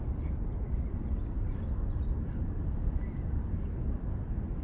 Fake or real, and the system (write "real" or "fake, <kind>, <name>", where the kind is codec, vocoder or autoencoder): real